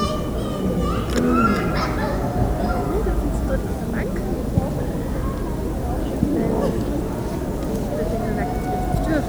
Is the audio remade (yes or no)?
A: no